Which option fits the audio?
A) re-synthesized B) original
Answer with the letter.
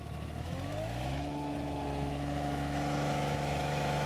A